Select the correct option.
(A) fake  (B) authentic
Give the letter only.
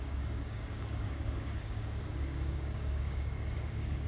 A